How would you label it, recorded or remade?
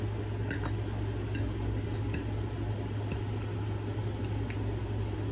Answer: recorded